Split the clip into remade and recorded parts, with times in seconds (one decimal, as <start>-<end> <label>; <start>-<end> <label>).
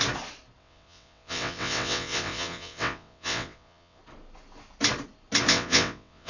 0.0-0.6 recorded; 0.6-4.0 remade; 4.0-5.5 recorded; 5.5-6.3 remade